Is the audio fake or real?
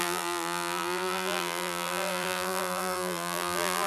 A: fake